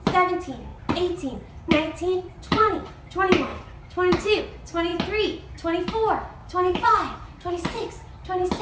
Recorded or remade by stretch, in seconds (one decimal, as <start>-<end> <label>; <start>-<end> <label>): 0.0-0.7 recorded; 0.7-2.9 remade; 2.9-3.5 recorded; 3.5-4.4 remade; 4.4-6.4 recorded; 6.4-8.1 remade; 8.1-8.6 recorded